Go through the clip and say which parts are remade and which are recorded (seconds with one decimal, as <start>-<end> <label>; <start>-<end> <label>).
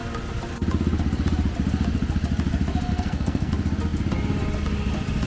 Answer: 0.0-2.9 recorded; 2.9-3.5 remade; 3.5-5.3 recorded